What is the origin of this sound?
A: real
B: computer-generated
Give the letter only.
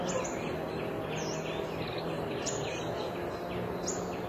A